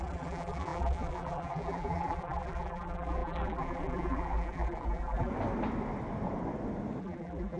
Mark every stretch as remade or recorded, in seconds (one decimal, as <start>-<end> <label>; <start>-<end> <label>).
0.0-5.3 remade; 5.3-7.0 recorded; 7.0-7.6 remade